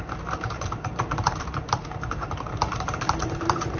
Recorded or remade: remade